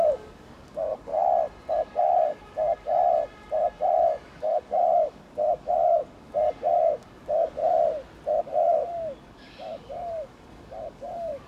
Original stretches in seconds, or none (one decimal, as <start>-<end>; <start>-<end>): 1.1-1.7; 3.0-3.9; 7.6-8.4

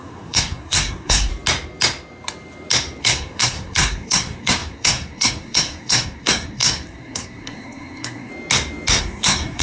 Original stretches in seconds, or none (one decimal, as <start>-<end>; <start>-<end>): 1.3-3.0; 8.3-9.0